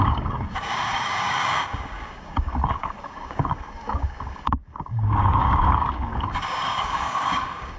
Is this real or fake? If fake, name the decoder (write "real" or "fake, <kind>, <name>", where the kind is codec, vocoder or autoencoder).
fake, codec, DAC